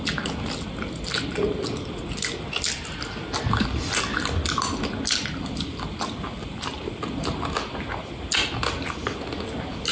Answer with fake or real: real